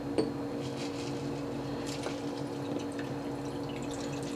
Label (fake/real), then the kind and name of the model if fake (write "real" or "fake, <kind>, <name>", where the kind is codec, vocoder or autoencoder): real